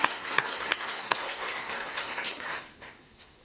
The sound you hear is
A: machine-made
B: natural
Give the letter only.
A